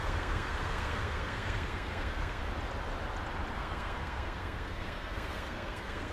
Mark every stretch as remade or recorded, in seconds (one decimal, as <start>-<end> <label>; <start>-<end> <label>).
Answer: 0.0-2.4 remade; 2.4-3.5 recorded; 3.5-6.1 remade